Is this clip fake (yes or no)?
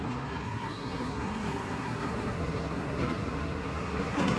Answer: yes